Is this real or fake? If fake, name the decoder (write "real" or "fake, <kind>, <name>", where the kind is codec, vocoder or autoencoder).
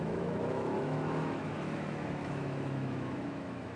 fake, autoencoder, DAC-VAE